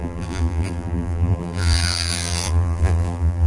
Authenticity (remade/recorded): remade